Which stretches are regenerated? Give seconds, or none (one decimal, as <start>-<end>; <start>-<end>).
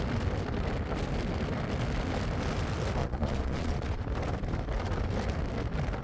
3.0-4.0